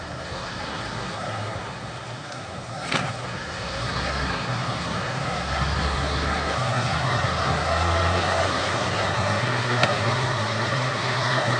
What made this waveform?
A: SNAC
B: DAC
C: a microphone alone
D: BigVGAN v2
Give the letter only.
A